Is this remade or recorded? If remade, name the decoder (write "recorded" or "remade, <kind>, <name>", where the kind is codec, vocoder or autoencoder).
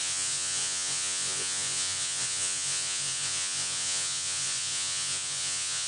remade, vocoder, Vocos